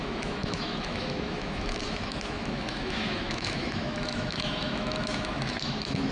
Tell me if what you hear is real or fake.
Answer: fake